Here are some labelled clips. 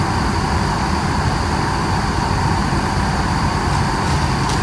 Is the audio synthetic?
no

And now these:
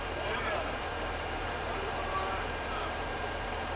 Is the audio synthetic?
yes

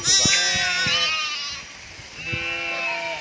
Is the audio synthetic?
no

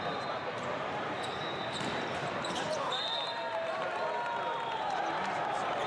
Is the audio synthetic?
yes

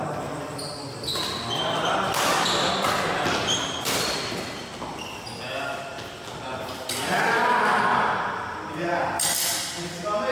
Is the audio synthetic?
no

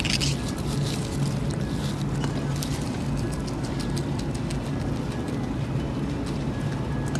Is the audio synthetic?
no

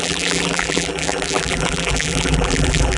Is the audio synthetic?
yes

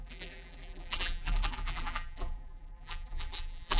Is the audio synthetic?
yes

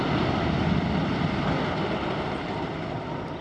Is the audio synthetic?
yes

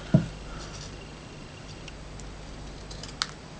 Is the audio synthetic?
no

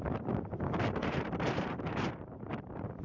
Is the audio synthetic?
yes